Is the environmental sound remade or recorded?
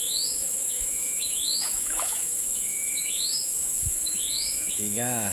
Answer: remade